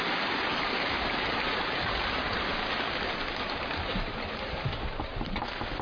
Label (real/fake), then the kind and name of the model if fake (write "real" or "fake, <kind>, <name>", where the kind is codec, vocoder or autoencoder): real